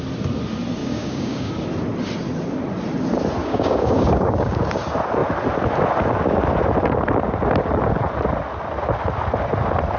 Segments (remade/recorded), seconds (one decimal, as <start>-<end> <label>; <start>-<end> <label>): 0.0-0.8 recorded; 0.8-1.5 remade; 1.5-3.4 recorded; 3.4-4.6 remade; 4.6-10.0 recorded